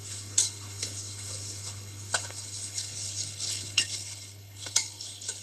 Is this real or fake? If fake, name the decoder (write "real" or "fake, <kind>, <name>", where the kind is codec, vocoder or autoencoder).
fake, codec, HILCodec